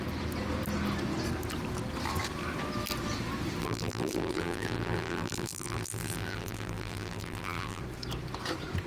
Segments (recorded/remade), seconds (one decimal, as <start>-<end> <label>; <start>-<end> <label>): 0.0-3.6 recorded; 3.6-7.8 remade; 7.8-8.9 recorded